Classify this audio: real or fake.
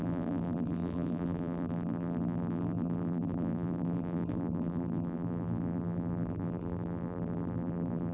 fake